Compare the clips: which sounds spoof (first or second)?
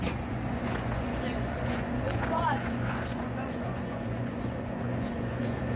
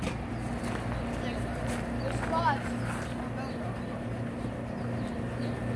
first